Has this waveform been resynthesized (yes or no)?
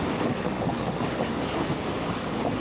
yes